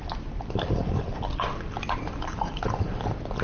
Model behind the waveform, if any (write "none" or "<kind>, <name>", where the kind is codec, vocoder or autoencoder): none